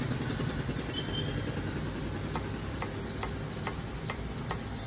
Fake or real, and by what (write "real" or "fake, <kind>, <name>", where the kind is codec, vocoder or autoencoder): real